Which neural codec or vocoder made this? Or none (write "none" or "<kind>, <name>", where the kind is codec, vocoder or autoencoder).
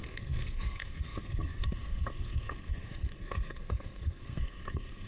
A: codec, SNAC